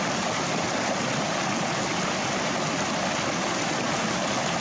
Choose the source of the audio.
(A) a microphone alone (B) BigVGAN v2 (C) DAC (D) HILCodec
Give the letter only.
A